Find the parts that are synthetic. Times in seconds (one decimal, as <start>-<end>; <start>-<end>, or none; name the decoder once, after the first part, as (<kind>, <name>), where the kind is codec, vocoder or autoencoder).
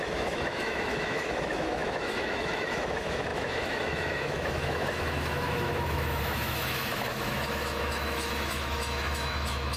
0.0-9.8 (autoencoder, DAC-VAE)